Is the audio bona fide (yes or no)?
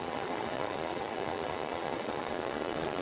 no